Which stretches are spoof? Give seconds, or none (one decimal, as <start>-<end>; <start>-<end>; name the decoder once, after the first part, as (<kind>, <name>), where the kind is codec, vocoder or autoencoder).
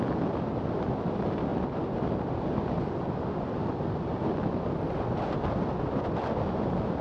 none